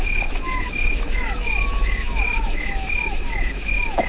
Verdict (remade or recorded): remade